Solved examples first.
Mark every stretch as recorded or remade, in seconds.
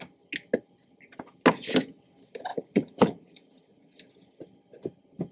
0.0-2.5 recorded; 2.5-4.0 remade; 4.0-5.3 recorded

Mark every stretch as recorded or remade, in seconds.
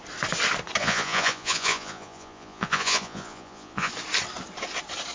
0.0-0.8 recorded; 0.8-3.9 remade; 3.9-5.1 recorded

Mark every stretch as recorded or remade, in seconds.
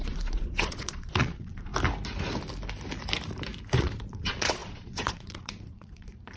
0.0-1.7 remade; 1.7-3.8 recorded; 3.8-6.4 remade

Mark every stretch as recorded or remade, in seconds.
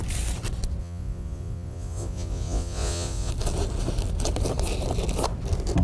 0.0-0.8 recorded; 0.8-3.3 remade; 3.3-5.8 recorded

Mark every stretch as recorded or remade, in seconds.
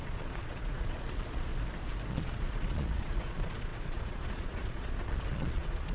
0.0-1.5 remade; 1.5-2.1 recorded; 2.1-5.9 remade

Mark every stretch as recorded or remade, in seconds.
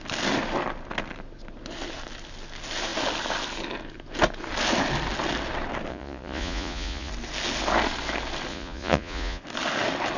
0.0-5.9 recorded; 5.9-7.1 remade; 7.1-8.5 recorded; 8.5-9.4 remade; 9.4-10.2 recorded